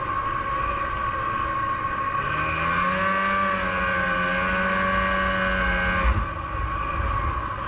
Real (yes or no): yes